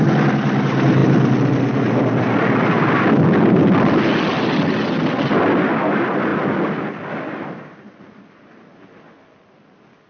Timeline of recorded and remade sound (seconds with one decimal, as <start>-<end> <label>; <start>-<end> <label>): 0.0-10.1 recorded